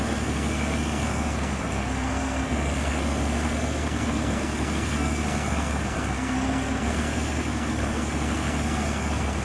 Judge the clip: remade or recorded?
remade